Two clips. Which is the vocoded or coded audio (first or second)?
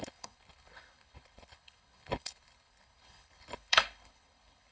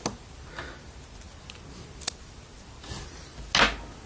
first